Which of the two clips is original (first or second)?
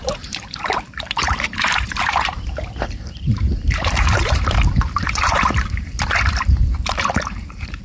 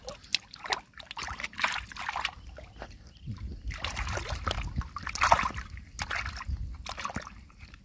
second